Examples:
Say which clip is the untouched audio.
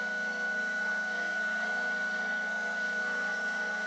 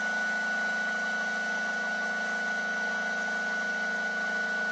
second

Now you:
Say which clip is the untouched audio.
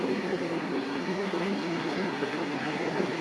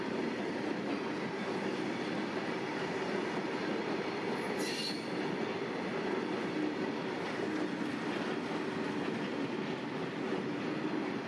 second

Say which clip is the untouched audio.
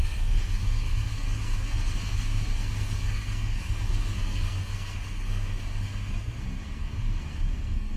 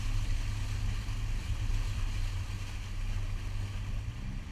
second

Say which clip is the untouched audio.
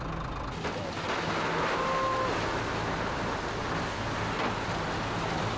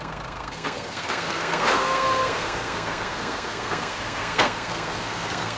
first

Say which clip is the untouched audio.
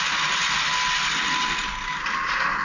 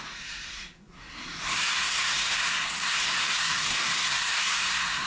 first